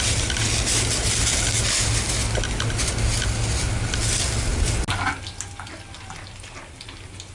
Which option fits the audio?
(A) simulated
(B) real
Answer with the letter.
B